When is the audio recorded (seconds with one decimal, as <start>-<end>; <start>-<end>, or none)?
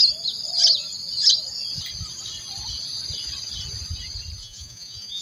0.0-4.4